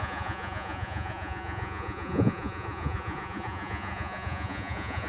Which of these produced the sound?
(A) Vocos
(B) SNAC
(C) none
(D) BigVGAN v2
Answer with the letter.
A